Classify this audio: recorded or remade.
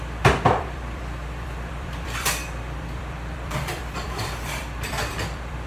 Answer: remade